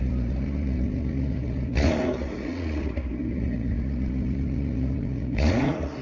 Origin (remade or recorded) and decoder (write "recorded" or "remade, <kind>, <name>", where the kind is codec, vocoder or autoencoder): remade, vocoder, Vocos